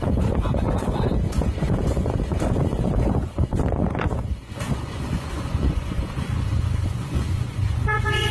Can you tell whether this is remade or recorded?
remade